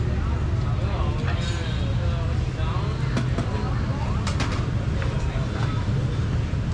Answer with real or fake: real